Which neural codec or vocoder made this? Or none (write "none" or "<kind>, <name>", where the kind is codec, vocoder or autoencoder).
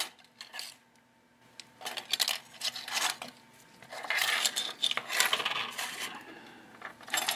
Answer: none